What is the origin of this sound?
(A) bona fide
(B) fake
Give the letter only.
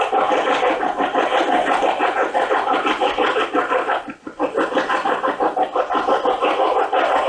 A